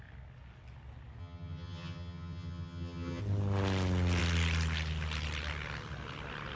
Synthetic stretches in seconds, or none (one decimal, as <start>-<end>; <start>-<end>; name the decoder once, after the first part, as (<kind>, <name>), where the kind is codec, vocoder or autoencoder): 1.2-3.2 (vocoder, HiFi-GAN)